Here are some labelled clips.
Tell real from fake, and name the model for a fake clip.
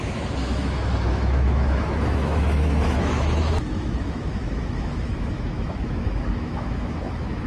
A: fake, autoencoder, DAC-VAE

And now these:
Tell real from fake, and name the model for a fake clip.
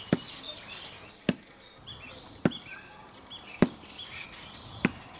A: real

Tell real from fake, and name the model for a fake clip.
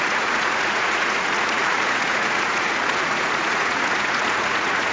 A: fake, vocoder, Vocos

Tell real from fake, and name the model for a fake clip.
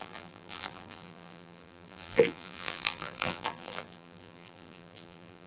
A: fake, vocoder, BigVGAN v2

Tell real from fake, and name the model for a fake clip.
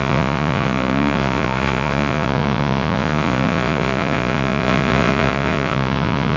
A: fake, vocoder, Vocos